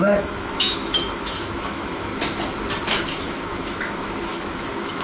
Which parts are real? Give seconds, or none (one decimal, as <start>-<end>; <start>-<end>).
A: 2.1-3.2